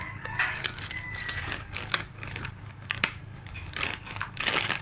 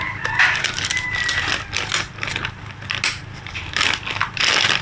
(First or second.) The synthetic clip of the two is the first